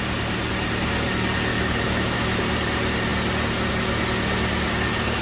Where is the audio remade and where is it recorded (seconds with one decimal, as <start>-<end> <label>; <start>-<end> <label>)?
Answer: 0.0-1.5 recorded; 1.5-2.4 remade; 2.4-5.2 recorded